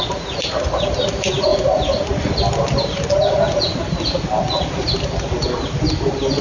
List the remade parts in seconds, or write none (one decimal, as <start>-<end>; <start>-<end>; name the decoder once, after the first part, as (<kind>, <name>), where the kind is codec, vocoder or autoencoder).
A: none